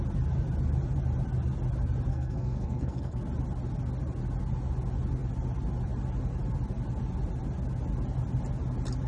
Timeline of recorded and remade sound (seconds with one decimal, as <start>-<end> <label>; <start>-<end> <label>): 0.0-2.1 recorded; 2.1-3.2 remade; 3.2-9.1 recorded